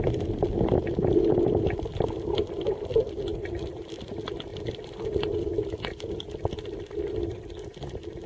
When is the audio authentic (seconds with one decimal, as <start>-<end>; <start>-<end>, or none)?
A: 0.0-8.3

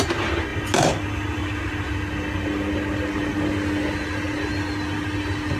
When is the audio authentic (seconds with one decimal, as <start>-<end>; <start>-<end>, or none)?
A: 0.0-5.6

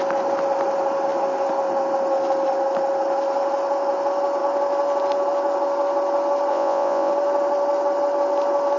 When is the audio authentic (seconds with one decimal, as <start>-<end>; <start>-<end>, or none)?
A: 0.0-6.5; 7.1-8.8

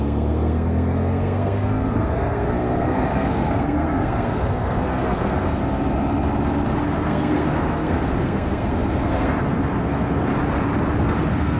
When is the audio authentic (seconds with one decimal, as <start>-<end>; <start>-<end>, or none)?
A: 5.6-6.8; 10.3-11.0